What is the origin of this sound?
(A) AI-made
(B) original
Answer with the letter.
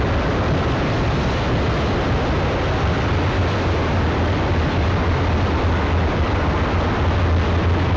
B